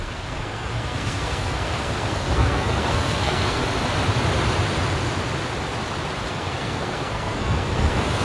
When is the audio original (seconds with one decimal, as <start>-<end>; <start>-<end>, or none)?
3.6-6.3